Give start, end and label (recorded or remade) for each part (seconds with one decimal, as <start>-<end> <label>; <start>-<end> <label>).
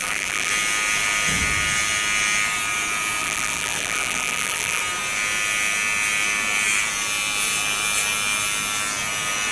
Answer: 0.0-0.5 remade; 0.5-3.2 recorded; 3.2-4.8 remade; 4.8-9.5 recorded